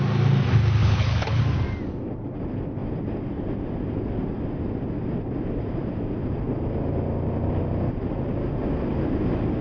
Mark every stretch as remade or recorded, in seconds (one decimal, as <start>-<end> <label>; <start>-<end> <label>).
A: 0.0-0.8 recorded; 0.8-1.4 remade; 1.4-9.6 recorded